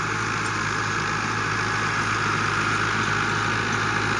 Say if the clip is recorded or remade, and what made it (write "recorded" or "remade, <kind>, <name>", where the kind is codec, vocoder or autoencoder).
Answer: recorded